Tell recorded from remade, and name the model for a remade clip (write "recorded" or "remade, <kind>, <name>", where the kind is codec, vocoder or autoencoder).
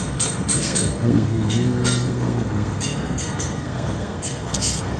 remade, codec, SNAC